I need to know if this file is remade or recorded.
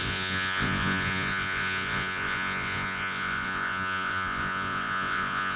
remade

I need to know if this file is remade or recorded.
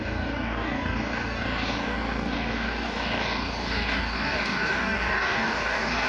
remade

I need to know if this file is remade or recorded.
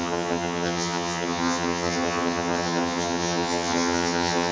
remade